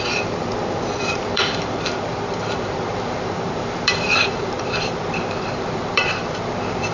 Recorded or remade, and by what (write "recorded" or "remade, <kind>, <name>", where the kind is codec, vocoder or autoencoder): remade, vocoder, BigVGAN v2